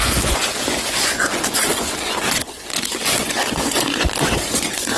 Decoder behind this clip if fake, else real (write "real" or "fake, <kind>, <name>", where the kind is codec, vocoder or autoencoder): fake, vocoder, Vocos